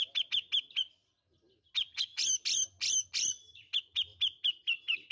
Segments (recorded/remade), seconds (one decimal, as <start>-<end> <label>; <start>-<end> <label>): 0.0-5.1 recorded